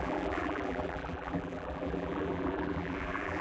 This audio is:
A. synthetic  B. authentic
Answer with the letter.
A